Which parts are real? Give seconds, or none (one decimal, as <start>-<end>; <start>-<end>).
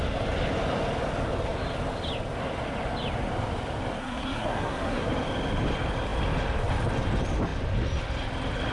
0.0-4.0; 5.1-8.7